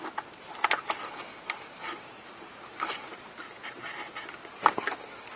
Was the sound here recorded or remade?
recorded